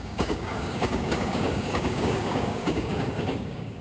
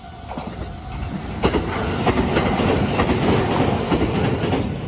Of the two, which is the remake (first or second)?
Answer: first